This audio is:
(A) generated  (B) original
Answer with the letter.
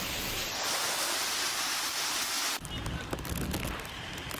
B